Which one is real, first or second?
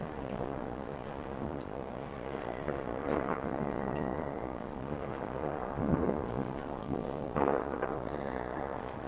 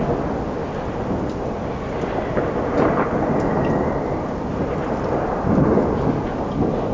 second